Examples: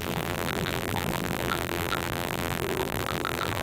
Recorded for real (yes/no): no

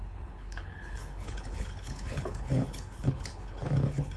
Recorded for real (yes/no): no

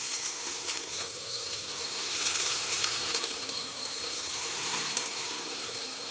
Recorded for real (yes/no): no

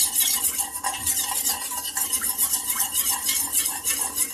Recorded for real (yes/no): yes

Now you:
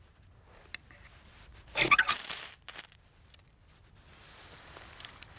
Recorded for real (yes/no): yes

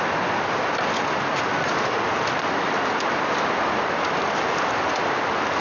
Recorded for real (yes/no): yes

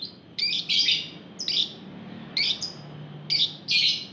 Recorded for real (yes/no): yes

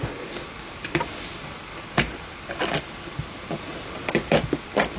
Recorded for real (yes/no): yes